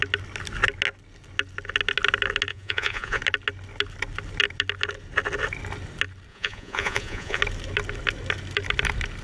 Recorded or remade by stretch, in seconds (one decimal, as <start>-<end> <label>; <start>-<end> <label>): 0.0-2.5 recorded; 2.5-3.2 remade; 3.2-6.3 recorded; 6.3-7.4 remade; 7.4-9.2 recorded